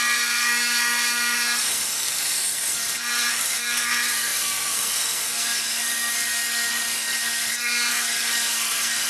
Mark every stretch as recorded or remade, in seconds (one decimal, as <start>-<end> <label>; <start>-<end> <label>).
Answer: 0.0-9.1 remade